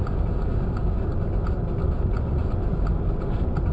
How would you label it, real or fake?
real